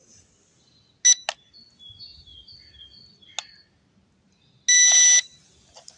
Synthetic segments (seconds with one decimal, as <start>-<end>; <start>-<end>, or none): none